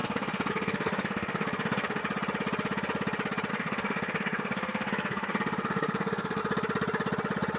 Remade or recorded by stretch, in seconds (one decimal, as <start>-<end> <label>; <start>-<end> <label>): 0.0-2.0 remade; 2.0-3.5 recorded; 3.5-6.4 remade; 6.4-7.6 recorded